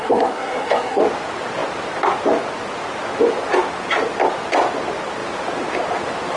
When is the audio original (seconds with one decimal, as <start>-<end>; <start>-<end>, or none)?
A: 1.0-6.4